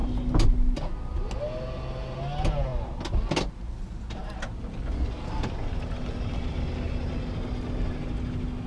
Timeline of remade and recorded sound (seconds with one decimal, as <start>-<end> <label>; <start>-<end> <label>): 0.0-8.7 recorded